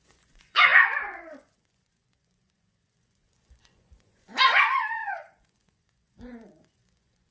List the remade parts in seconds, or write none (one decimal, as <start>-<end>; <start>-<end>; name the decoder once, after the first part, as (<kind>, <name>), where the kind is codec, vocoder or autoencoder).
0.0-7.3 (vocoder, Vocos)